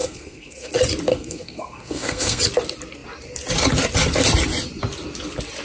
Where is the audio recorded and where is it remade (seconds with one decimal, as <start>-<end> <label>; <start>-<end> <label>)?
0.0-0.7 remade; 0.7-1.1 recorded; 1.1-2.4 remade; 2.4-5.6 recorded